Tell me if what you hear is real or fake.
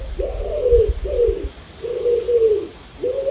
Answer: real